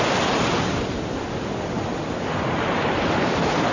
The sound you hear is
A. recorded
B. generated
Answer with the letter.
A